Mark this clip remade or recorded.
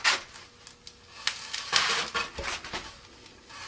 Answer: recorded